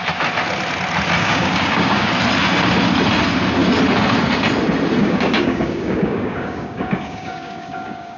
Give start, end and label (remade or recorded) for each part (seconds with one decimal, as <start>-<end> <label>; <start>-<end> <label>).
0.0-1.2 recorded; 1.2-2.1 remade; 2.1-5.0 recorded; 5.0-8.2 remade